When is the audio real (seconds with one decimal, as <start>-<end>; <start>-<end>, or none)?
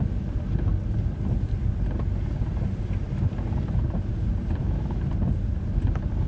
0.0-4.6; 5.1-6.3